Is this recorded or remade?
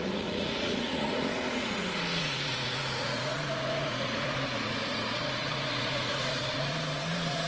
remade